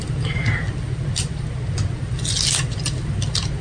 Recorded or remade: recorded